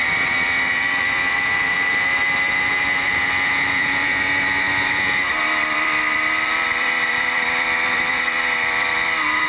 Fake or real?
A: fake